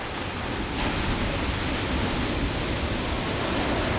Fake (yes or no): no